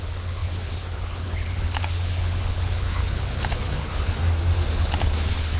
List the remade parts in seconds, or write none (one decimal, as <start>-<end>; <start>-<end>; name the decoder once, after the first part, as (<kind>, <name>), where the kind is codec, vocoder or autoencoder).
0.0-4.2 (codec, HILCodec); 4.8-5.6